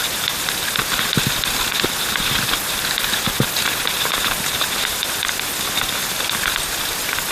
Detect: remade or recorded remade